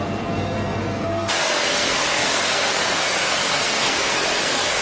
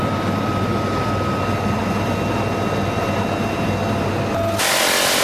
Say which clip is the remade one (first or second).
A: first